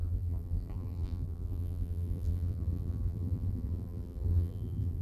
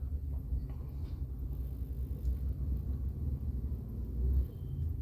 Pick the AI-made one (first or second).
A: first